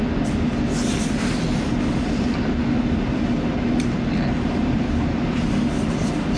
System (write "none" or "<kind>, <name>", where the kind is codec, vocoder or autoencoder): none